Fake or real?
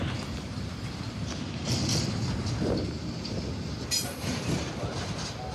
real